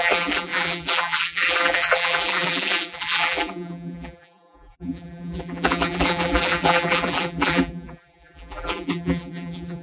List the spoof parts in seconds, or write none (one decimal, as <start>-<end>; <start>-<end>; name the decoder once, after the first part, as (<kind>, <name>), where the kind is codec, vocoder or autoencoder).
0.0-9.8 (vocoder, BigVGAN v2)